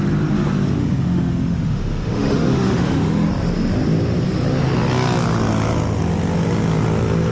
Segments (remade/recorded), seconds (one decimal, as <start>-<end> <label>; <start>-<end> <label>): 0.0-0.8 recorded; 0.8-3.3 remade; 3.3-7.3 recorded